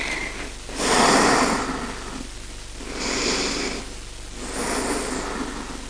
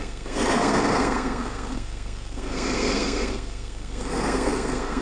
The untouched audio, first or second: first